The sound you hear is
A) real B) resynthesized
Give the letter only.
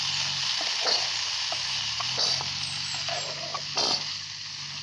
A